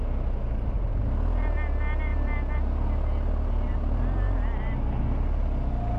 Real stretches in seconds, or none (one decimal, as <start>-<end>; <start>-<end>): 0.0-6.0